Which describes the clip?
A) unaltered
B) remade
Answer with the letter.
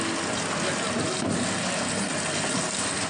A